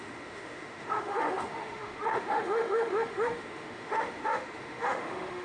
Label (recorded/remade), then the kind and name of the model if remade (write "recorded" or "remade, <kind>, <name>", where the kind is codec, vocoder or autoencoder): remade, autoencoder, DAC-VAE